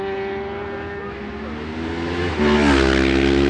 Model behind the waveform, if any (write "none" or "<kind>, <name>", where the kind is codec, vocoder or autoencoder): none